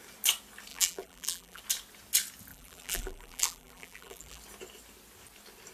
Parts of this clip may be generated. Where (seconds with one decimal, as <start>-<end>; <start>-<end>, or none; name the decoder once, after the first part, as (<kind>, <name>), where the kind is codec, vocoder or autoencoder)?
0.7-1.6 (vocoder, BigVGAN v2); 2.5-4.4